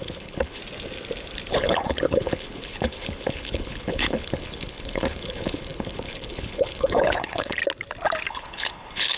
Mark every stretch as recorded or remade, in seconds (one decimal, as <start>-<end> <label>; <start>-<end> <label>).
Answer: 0.0-0.6 remade; 0.6-1.5 recorded; 1.5-7.6 remade; 7.6-8.3 recorded; 8.3-9.2 remade